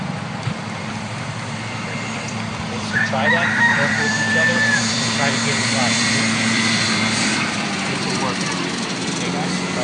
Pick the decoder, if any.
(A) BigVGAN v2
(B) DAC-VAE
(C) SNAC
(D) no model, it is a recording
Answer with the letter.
A